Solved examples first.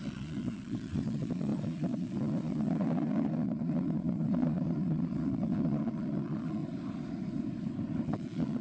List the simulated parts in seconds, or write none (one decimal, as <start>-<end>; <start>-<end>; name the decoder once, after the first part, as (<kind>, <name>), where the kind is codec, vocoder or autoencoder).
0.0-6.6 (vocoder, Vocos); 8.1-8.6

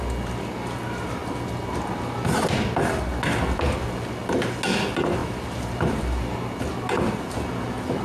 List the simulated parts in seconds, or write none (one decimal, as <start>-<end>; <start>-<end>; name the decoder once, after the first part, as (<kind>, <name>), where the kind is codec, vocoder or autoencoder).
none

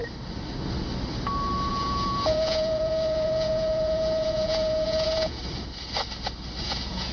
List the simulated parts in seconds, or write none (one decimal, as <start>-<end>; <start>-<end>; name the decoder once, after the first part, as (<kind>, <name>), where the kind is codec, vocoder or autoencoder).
1.7-5.4 (vocoder, Vocos); 6.6-7.1

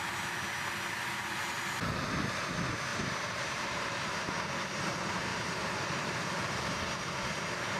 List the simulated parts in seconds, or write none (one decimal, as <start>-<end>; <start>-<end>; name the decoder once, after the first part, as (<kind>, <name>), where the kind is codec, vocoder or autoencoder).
2.9-4.3 (vocoder, BigVGAN v2); 5.3-6.8

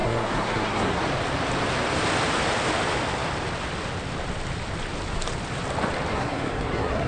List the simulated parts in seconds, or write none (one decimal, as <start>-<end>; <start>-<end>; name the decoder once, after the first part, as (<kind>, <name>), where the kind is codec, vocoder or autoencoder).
0.0-1.0 (codec, SNAC); 6.1-7.1

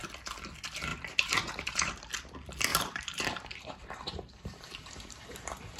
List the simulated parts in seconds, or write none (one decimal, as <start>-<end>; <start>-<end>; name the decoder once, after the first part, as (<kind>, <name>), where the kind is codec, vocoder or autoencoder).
0.9-2.2 (vocoder, BigVGAN v2); 2.7-5.8

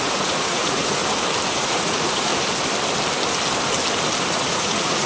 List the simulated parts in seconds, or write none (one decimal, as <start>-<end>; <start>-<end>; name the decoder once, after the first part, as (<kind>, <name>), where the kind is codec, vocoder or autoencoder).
0.0-1.0 (vocoder, Vocos); 1.5-2.3; 4.3-5.1

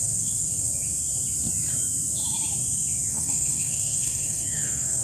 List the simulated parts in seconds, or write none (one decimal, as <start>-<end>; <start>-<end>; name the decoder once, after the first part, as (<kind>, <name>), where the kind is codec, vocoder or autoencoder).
0.0-0.7 (codec, SNAC); 3.1-5.0